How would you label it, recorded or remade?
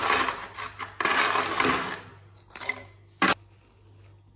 recorded